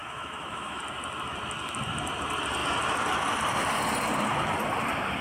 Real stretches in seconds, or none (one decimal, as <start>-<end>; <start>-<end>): 0.8-5.2

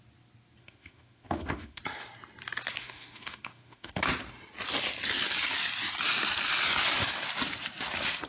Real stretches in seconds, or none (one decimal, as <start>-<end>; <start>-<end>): 0.0-0.6; 1.8-2.8; 4.0-8.3